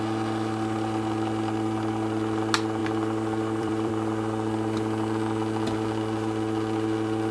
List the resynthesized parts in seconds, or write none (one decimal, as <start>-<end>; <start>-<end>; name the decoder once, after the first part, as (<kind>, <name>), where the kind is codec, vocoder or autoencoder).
2.8-3.9 (vocoder, BigVGAN v2)